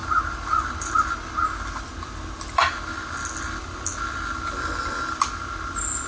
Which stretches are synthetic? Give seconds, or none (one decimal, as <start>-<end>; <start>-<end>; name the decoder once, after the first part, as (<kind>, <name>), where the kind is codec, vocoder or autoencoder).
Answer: none